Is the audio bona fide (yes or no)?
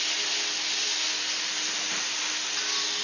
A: yes